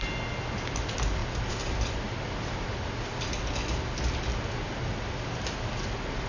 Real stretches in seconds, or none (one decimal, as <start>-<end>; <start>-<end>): 0.0-6.3